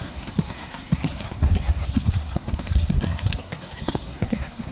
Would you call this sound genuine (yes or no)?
no